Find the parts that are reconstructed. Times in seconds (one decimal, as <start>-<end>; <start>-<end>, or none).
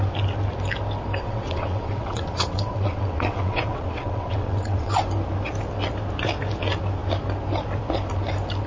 1.2-5.0